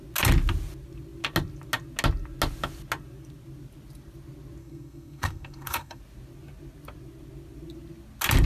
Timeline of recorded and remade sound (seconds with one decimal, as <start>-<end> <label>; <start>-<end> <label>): 0.0-4.6 recorded; 4.6-6.0 remade; 6.0-8.5 recorded